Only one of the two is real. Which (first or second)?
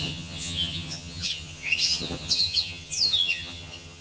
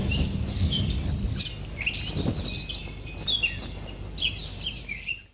second